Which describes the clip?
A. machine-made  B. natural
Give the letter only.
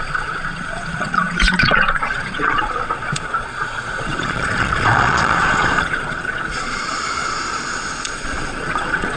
A